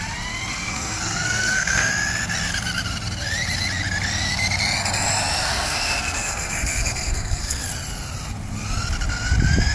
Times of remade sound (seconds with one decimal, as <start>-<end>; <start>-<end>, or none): 0.5-1.9; 5.5-7.6